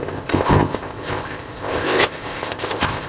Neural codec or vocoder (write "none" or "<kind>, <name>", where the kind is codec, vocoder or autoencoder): codec, ZipCodec